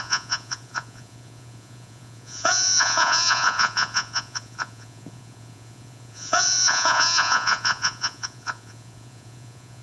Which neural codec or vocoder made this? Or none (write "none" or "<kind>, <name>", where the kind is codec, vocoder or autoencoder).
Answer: vocoder, Vocos